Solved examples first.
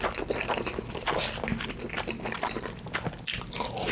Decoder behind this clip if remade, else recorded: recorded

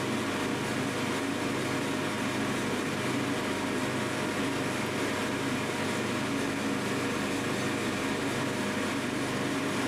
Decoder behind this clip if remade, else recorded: recorded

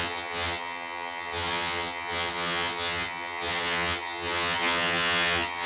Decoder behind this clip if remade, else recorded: remade, vocoder, HiFi-GAN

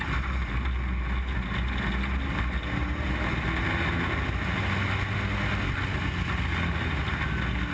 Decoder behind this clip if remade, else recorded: recorded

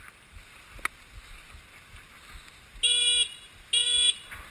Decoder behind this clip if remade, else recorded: recorded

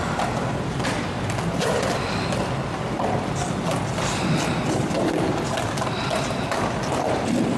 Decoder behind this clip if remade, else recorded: recorded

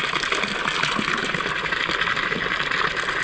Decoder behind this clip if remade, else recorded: recorded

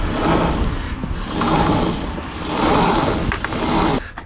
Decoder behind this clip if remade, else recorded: recorded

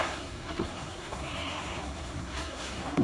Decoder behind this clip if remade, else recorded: remade, codec, SNAC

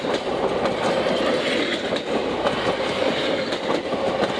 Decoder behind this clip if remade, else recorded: recorded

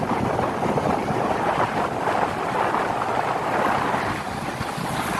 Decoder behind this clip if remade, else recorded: recorded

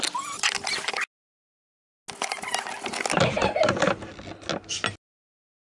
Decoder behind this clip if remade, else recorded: recorded